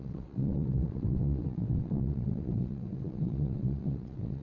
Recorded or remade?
remade